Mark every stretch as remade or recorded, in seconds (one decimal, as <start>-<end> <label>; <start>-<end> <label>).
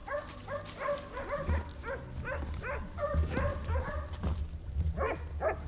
0.0-5.7 recorded